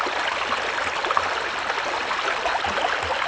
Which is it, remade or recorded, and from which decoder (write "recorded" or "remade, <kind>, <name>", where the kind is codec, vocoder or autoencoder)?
recorded